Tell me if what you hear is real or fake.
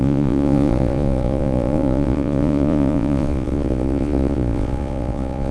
fake